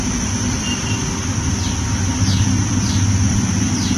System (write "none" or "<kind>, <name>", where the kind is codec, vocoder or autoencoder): none